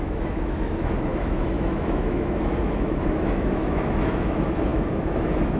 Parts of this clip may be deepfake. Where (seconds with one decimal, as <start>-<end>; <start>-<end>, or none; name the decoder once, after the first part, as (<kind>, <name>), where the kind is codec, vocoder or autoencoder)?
0.0-5.6 (autoencoder, DAC-VAE)